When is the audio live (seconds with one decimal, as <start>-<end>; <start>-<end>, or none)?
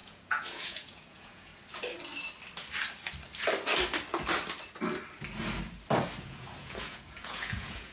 1.5-6.2